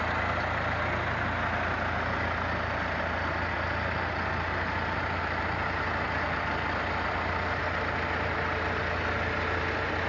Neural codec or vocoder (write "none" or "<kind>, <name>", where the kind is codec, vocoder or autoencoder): none